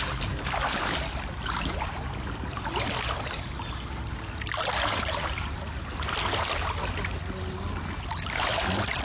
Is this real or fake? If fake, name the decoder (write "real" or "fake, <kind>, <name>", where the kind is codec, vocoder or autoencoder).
real